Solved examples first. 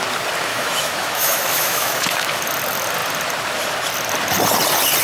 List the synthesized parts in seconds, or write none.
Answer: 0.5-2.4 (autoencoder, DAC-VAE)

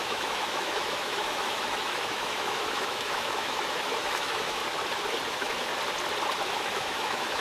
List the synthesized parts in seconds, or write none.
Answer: 0.0-4.6 (autoencoder, DAC-VAE); 5.3-5.7; 6.5-7.4

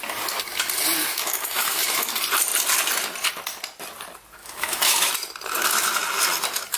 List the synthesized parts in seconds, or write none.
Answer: 1.0-2.1 (autoencoder, DAC-VAE); 4.4-5.1